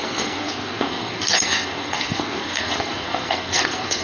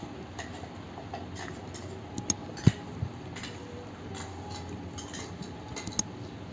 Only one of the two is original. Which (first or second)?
second